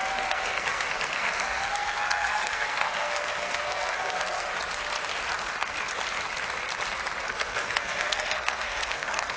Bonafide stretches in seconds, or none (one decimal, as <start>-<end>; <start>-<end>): 4.5-5.4; 5.9-7.2